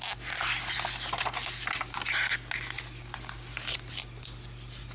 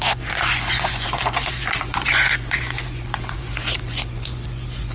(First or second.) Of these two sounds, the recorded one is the first